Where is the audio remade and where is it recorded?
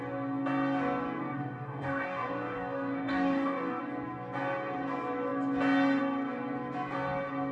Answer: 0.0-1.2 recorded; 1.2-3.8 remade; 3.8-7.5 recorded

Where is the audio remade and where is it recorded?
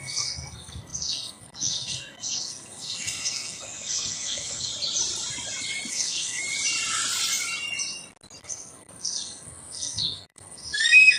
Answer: 0.0-4.7 remade; 4.7-5.9 recorded; 5.9-6.4 remade; 6.4-8.4 recorded; 8.4-11.2 remade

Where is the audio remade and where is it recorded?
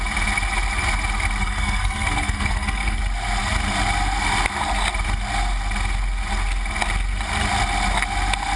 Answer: 0.0-1.4 recorded; 1.4-3.0 remade; 3.0-8.6 recorded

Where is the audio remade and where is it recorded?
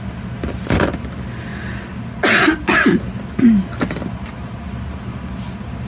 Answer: 0.0-5.9 recorded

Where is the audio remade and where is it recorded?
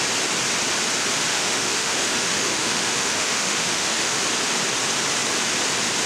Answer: 0.0-1.3 recorded; 1.3-4.2 remade; 4.2-6.1 recorded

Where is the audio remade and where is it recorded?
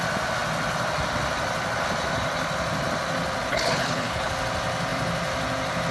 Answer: 0.0-3.5 recorded; 3.5-4.3 remade; 4.3-5.9 recorded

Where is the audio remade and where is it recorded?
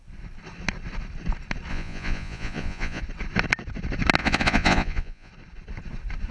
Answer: 0.0-1.7 recorded; 1.7-3.0 remade; 3.0-4.2 recorded; 4.2-5.3 remade; 5.3-6.3 recorded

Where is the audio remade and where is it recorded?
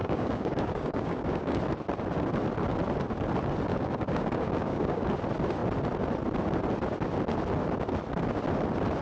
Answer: 0.0-1.6 remade; 1.6-3.7 recorded; 3.7-5.0 remade; 5.0-9.0 recorded